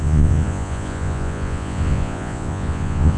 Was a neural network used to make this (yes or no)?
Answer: yes